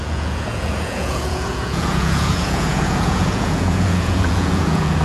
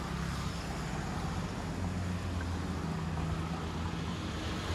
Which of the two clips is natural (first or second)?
second